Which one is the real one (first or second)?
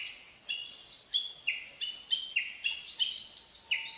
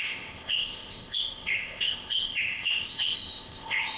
first